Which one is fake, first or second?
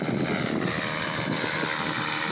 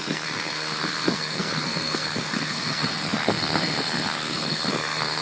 second